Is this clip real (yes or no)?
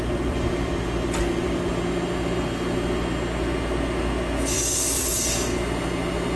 yes